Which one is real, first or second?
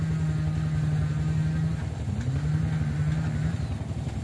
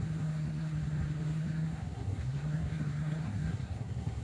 first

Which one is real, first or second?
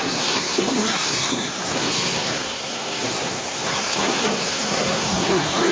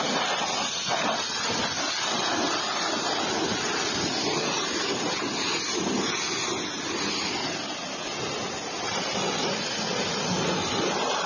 second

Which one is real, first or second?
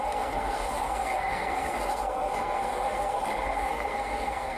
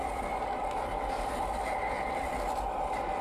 second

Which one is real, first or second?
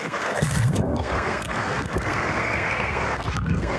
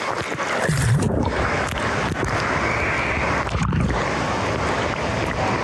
second